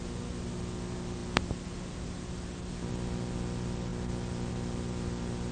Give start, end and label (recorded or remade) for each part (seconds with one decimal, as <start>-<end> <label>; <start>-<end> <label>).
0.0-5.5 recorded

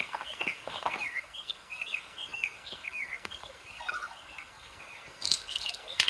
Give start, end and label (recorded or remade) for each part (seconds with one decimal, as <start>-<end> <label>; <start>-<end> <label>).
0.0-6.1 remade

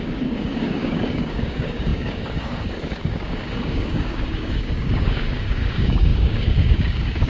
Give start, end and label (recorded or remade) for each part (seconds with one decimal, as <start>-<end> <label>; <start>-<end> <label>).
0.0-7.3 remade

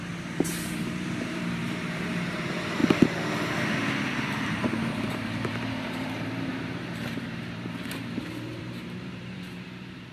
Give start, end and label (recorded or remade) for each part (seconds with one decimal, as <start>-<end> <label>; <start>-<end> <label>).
0.0-2.8 remade; 2.8-4.1 recorded; 4.1-10.1 remade

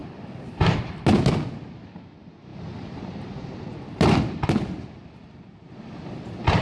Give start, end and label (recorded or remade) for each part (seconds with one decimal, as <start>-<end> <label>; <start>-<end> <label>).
0.0-0.9 remade; 0.9-2.5 recorded; 2.5-6.6 remade